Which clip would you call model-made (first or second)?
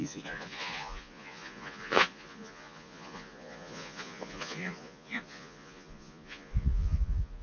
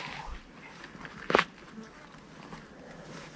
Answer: first